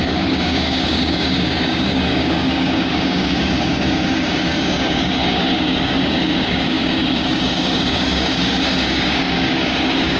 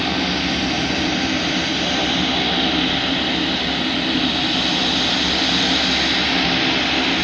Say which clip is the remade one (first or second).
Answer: first